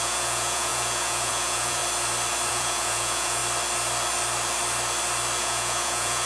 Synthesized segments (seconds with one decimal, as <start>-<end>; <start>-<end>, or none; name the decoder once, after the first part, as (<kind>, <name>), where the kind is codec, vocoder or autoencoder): 0.0-1.8 (vocoder, Vocos); 2.5-3.4; 5.4-6.3